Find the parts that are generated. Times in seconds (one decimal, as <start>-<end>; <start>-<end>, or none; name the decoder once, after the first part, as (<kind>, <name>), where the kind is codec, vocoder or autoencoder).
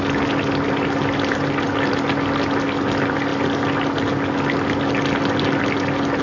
none